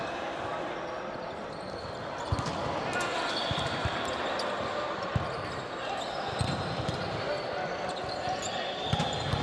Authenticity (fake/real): real